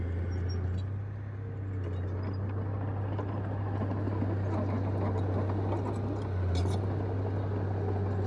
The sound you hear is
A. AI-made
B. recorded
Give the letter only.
B